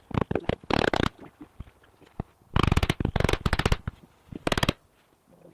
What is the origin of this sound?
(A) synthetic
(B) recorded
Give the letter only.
B